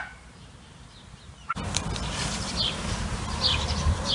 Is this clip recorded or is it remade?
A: recorded